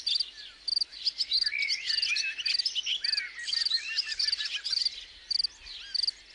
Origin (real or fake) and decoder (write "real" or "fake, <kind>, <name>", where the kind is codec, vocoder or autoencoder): real